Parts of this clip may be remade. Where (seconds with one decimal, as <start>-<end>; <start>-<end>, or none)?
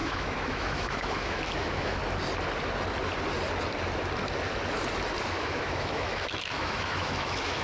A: 0.0-2.0; 5.3-7.6